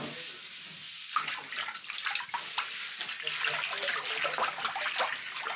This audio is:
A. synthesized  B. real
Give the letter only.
B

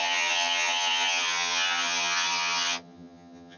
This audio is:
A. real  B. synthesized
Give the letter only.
B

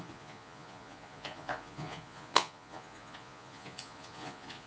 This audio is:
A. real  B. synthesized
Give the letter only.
B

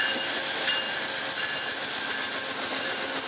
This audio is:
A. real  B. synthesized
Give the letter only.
A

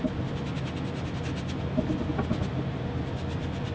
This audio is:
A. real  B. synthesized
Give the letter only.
A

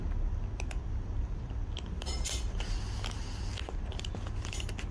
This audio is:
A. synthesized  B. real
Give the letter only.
B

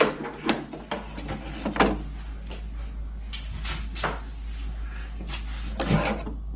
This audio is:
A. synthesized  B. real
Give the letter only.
B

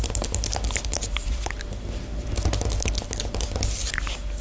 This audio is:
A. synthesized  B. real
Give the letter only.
B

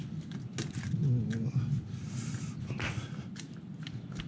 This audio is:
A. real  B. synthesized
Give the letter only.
A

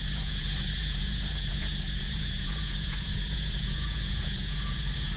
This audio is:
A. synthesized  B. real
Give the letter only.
A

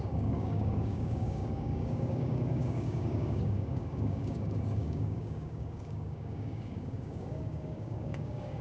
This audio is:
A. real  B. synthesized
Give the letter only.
B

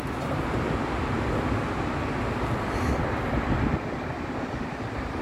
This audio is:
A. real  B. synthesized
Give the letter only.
A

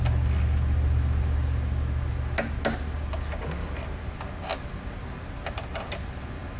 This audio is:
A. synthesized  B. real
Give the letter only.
B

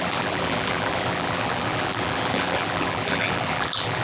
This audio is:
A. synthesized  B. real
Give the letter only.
A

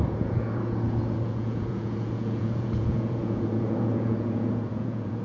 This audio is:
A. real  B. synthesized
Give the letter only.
B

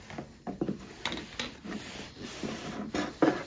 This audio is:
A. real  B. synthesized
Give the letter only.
A